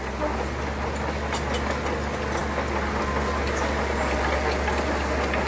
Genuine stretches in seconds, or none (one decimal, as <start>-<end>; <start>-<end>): 0.0-5.5